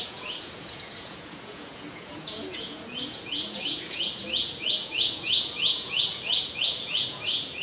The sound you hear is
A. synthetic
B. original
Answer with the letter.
A